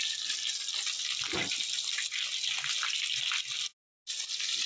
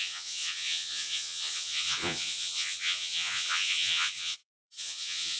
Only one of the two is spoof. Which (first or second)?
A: second